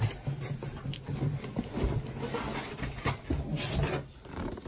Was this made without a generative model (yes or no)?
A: yes